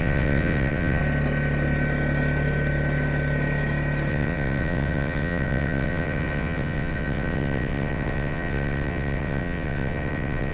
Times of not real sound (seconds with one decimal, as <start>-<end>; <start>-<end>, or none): 0.0-1.0; 4.1-10.5